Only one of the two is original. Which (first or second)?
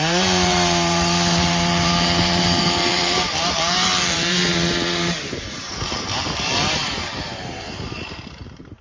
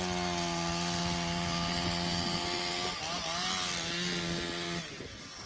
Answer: second